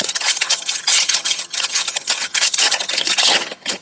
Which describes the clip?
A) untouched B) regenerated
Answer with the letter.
B